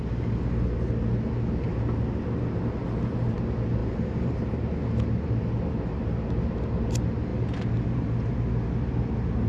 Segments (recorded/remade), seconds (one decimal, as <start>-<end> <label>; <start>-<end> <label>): 0.0-3.8 recorded; 3.8-4.3 remade; 4.3-9.5 recorded